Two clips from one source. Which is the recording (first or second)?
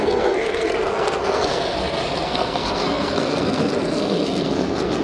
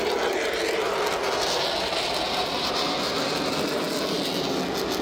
second